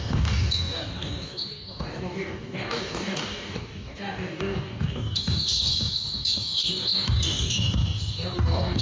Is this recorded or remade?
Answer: remade